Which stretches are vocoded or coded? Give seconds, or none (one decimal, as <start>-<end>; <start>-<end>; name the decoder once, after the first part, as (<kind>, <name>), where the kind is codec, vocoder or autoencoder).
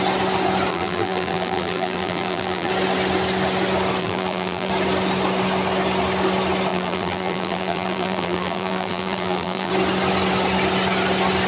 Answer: 0.7-2.7 (vocoder, BigVGAN v2); 4.0-4.7; 6.7-9.7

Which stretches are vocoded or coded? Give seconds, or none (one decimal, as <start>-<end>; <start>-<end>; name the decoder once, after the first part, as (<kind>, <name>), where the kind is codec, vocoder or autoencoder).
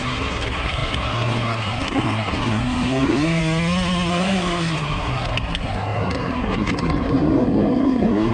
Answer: 0.0-3.4 (codec, SNAC); 4.1-8.3